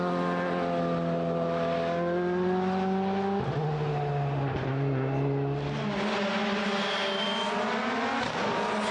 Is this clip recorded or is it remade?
recorded